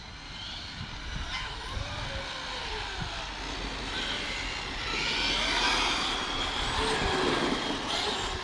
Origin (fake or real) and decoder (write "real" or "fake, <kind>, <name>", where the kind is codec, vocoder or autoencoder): real